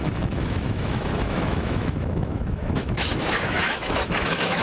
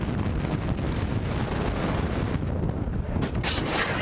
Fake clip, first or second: first